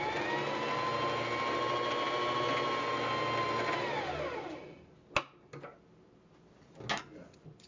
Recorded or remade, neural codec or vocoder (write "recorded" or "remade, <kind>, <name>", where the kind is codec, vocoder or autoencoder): recorded